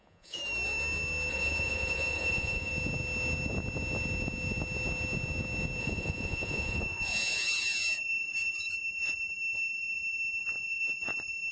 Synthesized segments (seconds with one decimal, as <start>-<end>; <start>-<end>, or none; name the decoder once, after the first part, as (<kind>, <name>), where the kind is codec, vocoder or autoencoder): 0.0-0.4 (vocoder, Vocos); 1.3-2.7; 5.8-11.5